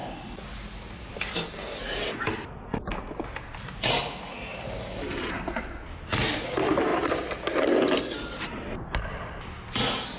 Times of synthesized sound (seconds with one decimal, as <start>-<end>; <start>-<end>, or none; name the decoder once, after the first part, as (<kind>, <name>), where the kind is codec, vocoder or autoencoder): 4.5-5.6 (vocoder, BigVGAN v2)